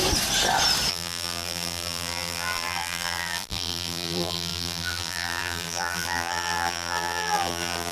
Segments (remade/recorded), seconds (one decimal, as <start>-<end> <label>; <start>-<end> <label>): 0.0-0.9 recorded; 0.9-7.9 remade